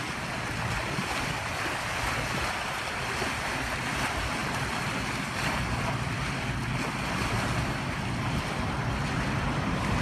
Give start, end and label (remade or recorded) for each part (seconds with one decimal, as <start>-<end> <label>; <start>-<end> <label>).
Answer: 0.0-10.0 recorded